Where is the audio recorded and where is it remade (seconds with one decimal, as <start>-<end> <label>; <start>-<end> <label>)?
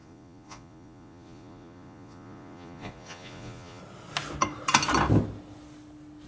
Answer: 0.0-3.8 remade; 3.8-6.3 recorded